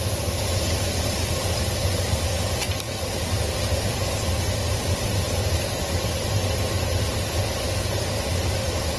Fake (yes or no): no